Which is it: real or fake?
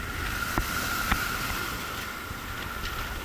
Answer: real